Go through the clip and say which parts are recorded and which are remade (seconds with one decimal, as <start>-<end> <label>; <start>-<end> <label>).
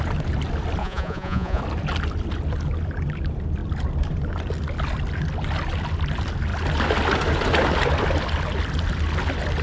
0.0-0.8 recorded; 0.8-1.6 remade; 1.6-9.6 recorded